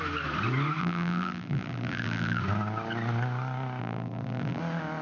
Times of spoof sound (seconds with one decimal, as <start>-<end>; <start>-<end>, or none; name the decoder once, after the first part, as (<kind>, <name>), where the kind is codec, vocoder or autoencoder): 0.8-2.4 (vocoder, BigVGAN v2); 3.8-4.6